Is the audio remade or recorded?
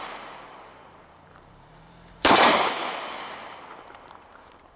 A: remade